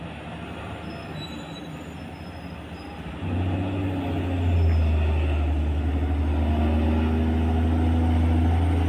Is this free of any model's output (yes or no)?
yes